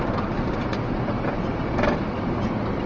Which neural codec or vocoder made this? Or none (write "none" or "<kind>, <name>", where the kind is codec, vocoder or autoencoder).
none